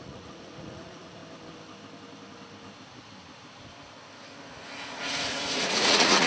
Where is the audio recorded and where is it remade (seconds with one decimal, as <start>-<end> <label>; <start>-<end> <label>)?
0.0-1.2 remade; 1.2-5.0 recorded; 5.0-6.3 remade